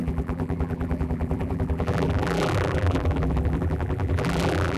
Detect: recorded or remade remade